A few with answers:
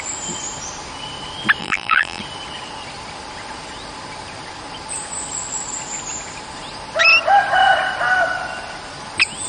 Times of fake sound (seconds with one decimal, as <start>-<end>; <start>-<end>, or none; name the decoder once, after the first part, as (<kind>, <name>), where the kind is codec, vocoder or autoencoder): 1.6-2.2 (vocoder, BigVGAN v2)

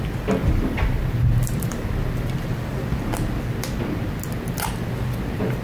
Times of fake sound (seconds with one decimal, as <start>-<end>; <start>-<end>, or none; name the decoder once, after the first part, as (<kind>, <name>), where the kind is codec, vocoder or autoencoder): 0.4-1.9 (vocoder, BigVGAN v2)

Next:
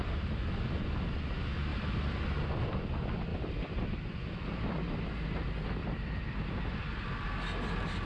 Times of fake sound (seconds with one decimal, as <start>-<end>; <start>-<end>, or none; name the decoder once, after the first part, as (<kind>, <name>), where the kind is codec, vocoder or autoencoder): 1.7-2.8 (vocoder, BigVGAN v2); 3.3-4.0; 5.8-7.3

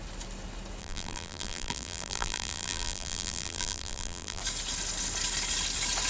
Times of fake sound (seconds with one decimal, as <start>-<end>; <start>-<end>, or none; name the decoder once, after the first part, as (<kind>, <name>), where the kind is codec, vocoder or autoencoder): 0.8-4.4 (vocoder, BigVGAN v2)